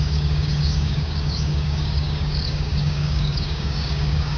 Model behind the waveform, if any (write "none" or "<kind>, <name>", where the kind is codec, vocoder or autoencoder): codec, DAC